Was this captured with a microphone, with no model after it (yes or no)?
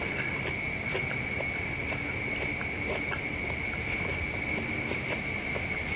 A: yes